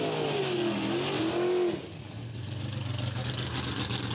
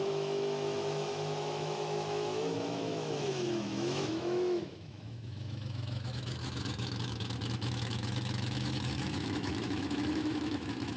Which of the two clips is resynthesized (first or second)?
second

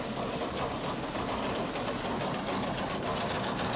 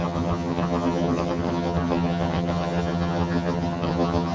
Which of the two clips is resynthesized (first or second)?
second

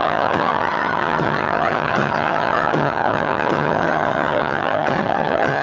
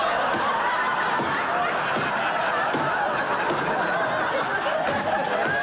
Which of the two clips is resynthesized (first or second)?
first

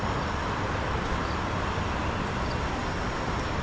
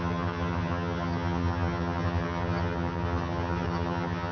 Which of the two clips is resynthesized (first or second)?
second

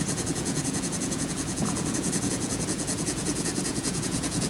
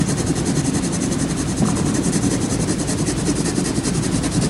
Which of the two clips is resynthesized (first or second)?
first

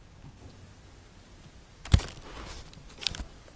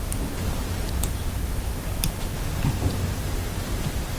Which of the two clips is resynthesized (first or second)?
second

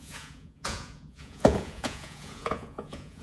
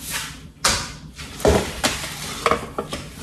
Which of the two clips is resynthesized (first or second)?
first